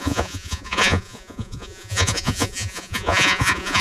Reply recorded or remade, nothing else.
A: remade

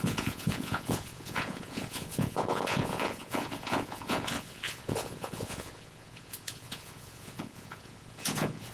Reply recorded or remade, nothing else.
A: remade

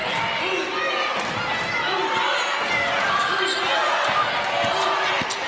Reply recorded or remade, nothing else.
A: recorded